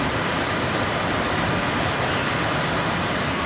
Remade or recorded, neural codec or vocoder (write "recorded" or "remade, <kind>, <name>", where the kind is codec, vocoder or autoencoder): recorded